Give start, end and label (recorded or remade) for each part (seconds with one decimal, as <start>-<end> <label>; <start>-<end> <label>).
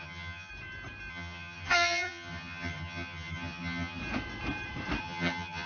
0.0-0.5 remade; 0.5-1.1 recorded; 1.1-4.0 remade; 4.0-5.0 recorded; 5.0-5.7 remade